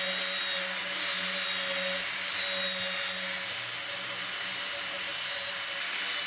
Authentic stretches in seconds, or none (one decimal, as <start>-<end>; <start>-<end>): 0.0-6.3